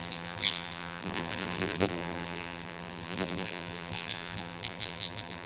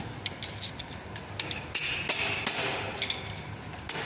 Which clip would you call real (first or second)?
second